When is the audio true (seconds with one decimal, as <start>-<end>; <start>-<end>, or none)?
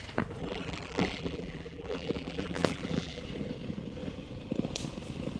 0.0-0.4; 3.2-5.4